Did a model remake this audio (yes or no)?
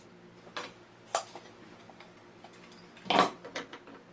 no